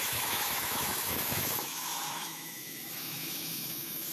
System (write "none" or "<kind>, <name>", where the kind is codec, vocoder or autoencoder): autoencoder, DAC-VAE